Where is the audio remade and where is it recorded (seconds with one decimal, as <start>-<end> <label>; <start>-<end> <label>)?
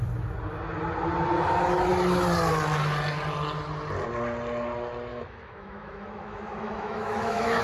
0.0-5.1 recorded; 5.1-7.6 remade